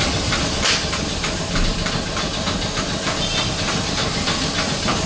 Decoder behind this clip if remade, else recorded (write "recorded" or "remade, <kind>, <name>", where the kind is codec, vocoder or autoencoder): recorded